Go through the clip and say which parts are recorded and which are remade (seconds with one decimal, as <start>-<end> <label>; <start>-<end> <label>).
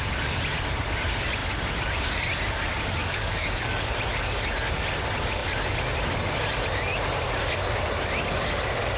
0.0-3.0 recorded; 3.0-3.9 remade; 3.9-9.0 recorded